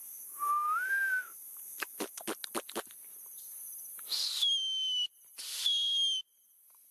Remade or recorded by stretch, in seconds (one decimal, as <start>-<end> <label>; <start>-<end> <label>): 0.0-2.2 remade; 2.2-6.9 recorded